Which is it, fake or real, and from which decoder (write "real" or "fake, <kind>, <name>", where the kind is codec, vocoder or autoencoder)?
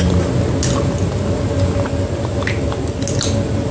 real